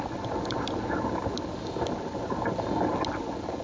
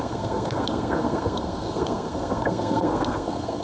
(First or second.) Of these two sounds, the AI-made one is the second